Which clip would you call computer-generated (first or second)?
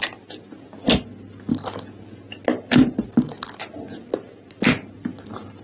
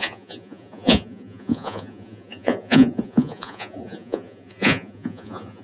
second